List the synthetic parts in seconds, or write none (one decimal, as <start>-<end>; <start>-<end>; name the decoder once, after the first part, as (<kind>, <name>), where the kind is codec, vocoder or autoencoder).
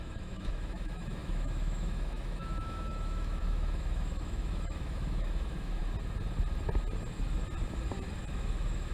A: 0.0-5.8 (autoencoder, DAC-VAE); 8.3-8.9